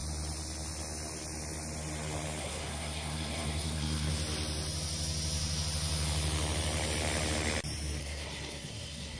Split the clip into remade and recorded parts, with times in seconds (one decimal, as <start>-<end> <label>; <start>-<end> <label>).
0.0-2.4 recorded; 2.4-4.1 remade; 4.1-8.0 recorded; 8.0-9.2 remade